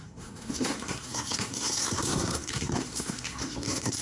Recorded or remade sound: remade